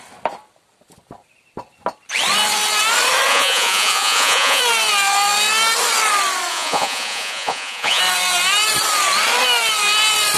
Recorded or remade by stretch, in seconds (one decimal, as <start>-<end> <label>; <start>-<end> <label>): 0.0-3.3 recorded; 3.3-4.6 remade; 4.6-6.5 recorded; 6.5-8.0 remade; 8.0-10.4 recorded